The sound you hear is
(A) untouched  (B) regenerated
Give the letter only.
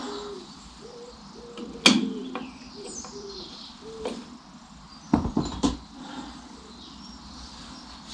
A